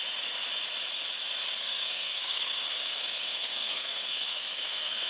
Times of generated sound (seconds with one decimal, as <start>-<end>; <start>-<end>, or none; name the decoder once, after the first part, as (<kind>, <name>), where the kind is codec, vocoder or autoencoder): 1.6-5.1 (codec, SNAC)

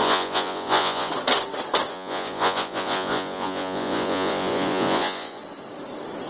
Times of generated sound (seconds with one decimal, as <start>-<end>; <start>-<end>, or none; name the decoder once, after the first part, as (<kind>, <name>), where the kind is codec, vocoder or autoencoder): 0.0-1.1 (vocoder, Vocos); 1.9-5.4

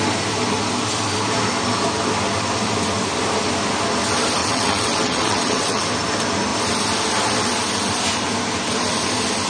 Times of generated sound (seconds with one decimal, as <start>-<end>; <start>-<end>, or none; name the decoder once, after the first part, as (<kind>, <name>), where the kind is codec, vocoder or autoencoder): 4.4-5.8 (vocoder, WaveNeXt)

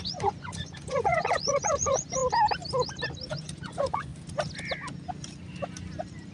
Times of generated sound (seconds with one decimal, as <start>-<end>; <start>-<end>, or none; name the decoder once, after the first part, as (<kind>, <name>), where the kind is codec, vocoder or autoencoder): 0.0-2.2 (vocoder, Vocos); 3.3-4.1

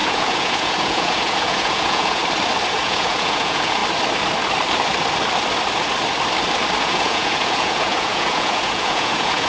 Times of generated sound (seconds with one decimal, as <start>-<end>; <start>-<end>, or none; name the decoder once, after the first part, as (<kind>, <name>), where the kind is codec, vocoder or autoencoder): 0.0-2.2 (vocoder, Vocos); 2.7-3.8; 6.8-9.5

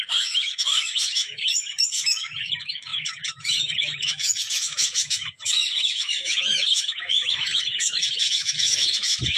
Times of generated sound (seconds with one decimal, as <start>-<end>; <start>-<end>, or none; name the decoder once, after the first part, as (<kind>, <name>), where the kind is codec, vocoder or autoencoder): 0.0-9.4 (autoencoder, DAC-VAE)

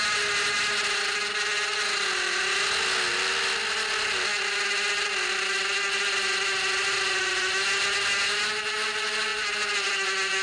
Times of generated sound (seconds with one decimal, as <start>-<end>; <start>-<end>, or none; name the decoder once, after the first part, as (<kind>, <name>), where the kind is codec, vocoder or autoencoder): none